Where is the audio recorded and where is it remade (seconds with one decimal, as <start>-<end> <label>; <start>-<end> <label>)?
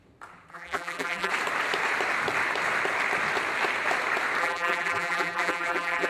0.0-0.5 recorded; 0.5-1.3 remade; 1.3-4.4 recorded; 4.4-6.1 remade